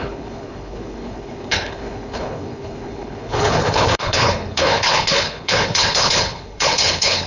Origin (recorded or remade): remade